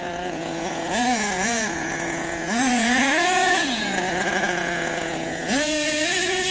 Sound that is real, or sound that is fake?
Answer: fake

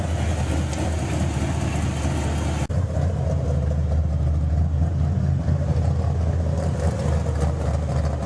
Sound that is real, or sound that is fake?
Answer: real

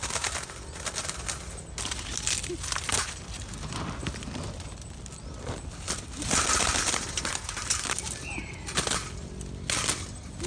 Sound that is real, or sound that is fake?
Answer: real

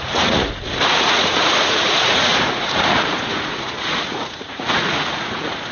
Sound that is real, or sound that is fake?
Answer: fake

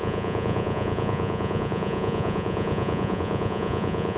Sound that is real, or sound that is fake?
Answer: fake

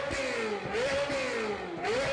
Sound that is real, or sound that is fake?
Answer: real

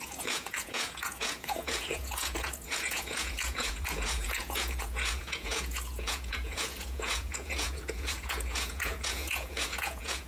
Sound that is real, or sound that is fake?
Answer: fake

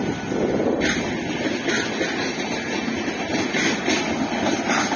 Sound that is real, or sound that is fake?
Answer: real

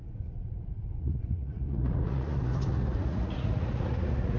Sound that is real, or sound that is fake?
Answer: fake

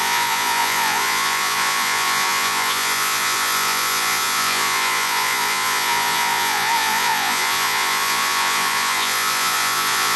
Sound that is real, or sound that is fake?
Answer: fake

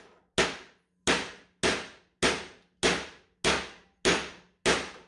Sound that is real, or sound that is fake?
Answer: real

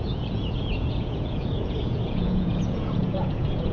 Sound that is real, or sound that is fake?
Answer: fake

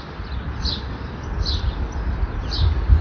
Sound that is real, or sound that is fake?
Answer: real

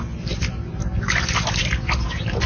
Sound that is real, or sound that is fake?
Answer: real